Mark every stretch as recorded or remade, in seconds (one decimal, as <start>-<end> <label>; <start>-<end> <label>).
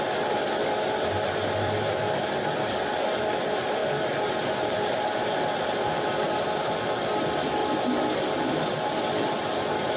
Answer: 0.0-10.0 remade